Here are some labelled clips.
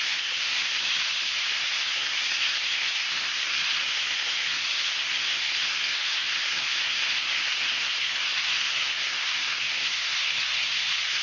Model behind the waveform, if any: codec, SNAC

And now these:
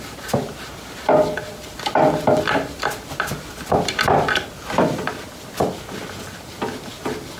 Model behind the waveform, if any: none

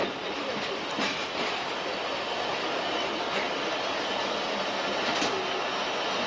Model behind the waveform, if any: none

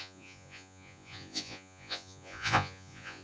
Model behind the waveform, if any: vocoder, Vocos